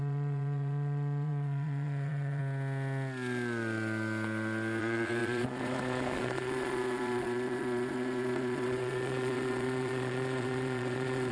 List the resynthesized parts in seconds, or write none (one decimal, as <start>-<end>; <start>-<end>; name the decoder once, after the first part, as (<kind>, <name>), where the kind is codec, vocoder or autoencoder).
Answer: 0.0-2.4 (vocoder, Vocos); 4.8-11.3

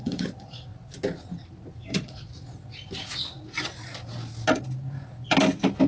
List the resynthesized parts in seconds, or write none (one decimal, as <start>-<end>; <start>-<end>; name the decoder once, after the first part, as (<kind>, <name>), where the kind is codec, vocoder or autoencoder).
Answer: 0.0-0.7 (vocoder, Vocos); 1.8-2.3